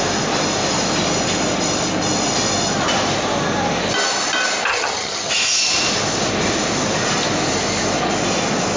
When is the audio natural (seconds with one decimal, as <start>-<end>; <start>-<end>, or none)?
0.0-4.7; 5.3-8.8